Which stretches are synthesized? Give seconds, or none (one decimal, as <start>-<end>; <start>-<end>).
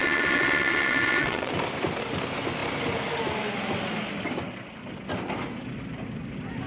0.0-1.5